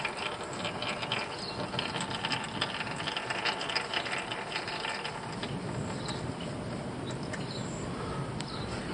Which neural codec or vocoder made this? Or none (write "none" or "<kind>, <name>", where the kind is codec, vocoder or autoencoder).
none